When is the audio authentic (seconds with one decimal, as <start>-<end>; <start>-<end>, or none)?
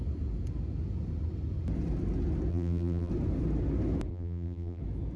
0.0-2.5; 3.1-4.1; 4.8-5.2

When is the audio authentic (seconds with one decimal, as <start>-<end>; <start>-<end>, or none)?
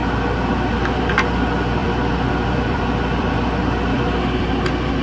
1.0-1.8; 4.4-5.0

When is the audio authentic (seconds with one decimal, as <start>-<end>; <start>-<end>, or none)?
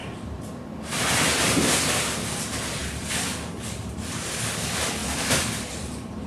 0.6-2.8; 4.4-5.0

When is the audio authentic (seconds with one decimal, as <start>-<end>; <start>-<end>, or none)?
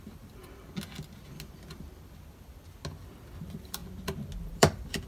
0.4-3.0; 3.8-4.4